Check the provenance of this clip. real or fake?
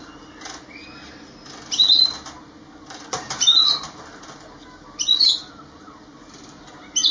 real